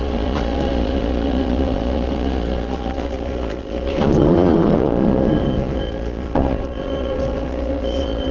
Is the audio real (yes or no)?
no